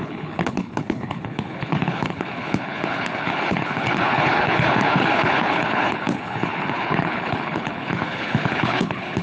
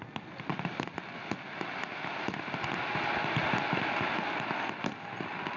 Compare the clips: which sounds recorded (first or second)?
second